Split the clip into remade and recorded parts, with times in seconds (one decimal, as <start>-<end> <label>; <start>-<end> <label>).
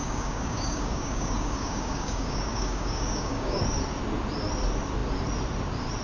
0.0-3.6 remade; 3.6-6.0 recorded